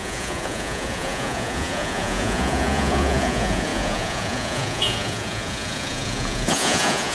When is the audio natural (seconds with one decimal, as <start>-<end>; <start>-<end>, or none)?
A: none